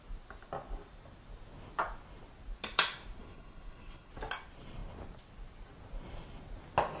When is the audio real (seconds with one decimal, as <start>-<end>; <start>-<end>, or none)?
0.0-3.2; 4.1-7.0